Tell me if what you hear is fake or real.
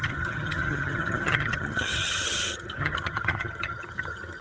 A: fake